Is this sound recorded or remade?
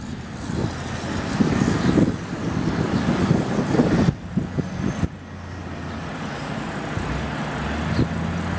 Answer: recorded